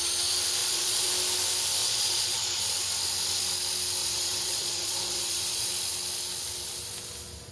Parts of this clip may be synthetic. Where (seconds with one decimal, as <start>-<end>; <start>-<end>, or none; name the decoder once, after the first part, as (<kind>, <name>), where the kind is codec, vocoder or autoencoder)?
0.6-1.1 (vocoder, Vocos); 1.8-2.6; 4.0-5.7